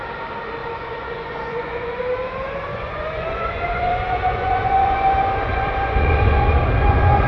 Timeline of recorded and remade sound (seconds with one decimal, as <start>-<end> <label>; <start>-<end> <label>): 0.0-0.6 recorded; 0.6-2.0 remade; 2.0-2.7 recorded; 2.7-7.3 remade